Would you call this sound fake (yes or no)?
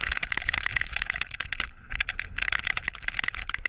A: yes